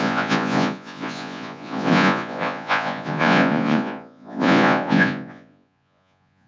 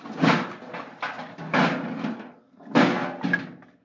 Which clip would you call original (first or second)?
second